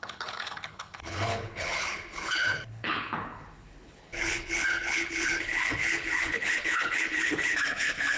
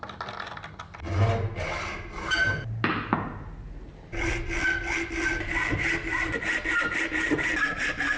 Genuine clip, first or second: second